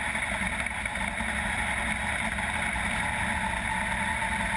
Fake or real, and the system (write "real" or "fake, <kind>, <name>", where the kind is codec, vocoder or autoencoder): real